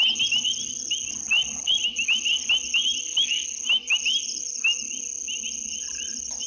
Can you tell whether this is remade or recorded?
recorded